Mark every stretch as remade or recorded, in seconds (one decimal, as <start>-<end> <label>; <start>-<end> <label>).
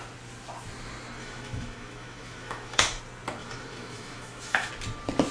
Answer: 0.0-1.2 recorded; 1.2-3.0 remade; 3.0-3.4 recorded; 3.4-4.7 remade; 4.7-5.3 recorded